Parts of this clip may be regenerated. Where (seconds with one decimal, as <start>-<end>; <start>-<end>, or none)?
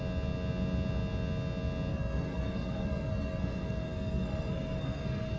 1.9-5.4